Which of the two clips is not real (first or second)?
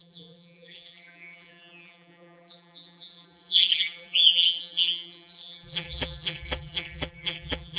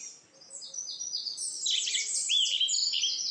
first